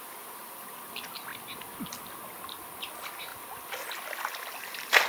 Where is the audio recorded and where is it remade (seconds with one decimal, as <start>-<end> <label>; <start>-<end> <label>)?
0.0-3.3 recorded; 3.3-4.3 remade; 4.3-5.1 recorded